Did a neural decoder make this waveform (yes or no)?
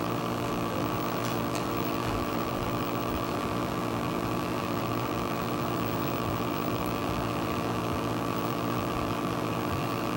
yes